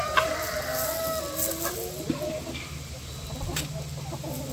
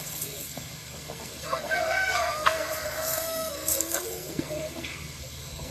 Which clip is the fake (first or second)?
second